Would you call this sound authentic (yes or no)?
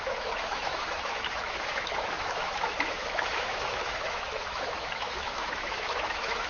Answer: no